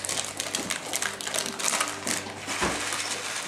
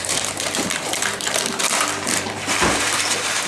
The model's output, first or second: second